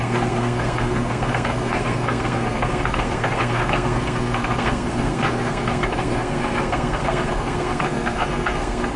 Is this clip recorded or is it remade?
remade